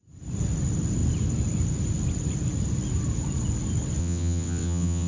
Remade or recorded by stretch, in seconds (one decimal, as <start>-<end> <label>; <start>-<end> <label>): 0.0-4.0 recorded; 4.0-5.1 remade